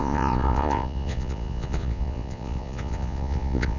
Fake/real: fake